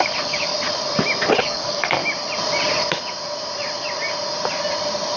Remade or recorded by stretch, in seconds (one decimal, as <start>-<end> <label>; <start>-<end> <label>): 0.0-0.5 remade; 0.5-1.4 recorded; 1.4-2.0 remade; 2.0-5.2 recorded